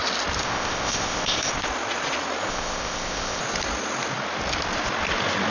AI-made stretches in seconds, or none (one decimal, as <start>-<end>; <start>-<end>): 0.4-1.5; 2.5-3.4